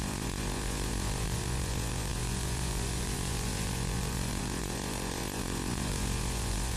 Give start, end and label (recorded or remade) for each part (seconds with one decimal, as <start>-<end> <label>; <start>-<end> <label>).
0.0-6.8 remade